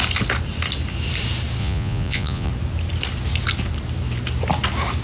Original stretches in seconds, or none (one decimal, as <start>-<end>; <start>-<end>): 0.0-1.6; 2.5-5.0